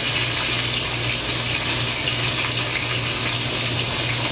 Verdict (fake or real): real